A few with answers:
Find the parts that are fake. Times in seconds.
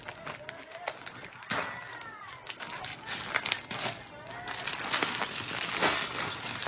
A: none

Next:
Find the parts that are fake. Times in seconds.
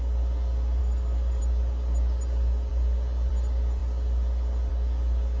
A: 0.8-1.4 (codec, DAC)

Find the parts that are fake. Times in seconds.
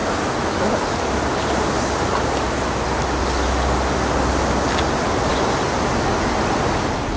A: none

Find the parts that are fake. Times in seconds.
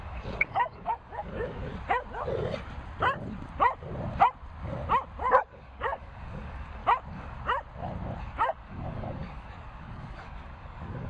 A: 0.0-1.7 (codec, DAC); 5.5-6.8; 8.2-11.1